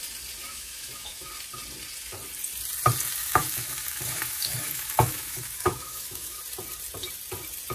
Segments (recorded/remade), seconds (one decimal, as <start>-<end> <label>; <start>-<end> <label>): 0.0-0.5 recorded; 0.5-1.3 remade; 1.3-3.2 recorded; 3.2-6.4 remade; 6.4-7.7 recorded